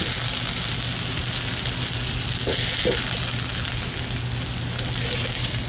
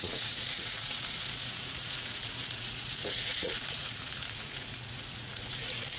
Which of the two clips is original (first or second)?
first